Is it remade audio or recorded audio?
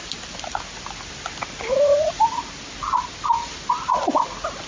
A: recorded